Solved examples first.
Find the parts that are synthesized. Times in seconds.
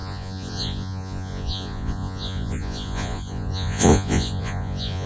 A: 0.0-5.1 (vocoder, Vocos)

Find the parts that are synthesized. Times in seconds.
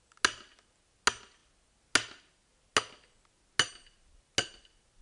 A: none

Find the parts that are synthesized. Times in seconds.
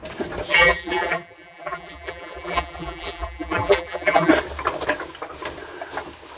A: 0.5-4.3 (vocoder, BigVGAN v2)